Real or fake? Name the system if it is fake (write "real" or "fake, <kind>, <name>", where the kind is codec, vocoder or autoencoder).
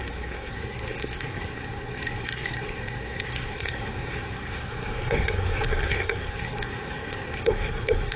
fake, codec, SNAC